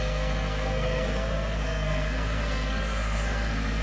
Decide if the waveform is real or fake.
fake